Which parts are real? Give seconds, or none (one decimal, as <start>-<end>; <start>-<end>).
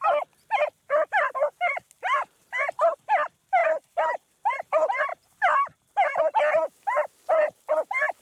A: 0.0-5.1; 6.2-8.2